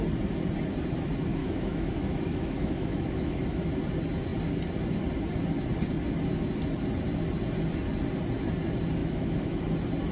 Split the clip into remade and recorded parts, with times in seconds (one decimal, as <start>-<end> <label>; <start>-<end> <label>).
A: 0.0-1.4 recorded; 1.4-3.6 remade; 3.6-9.0 recorded; 9.0-9.6 remade; 9.6-10.1 recorded